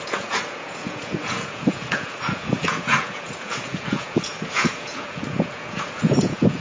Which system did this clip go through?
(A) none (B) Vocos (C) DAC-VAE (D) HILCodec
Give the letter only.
B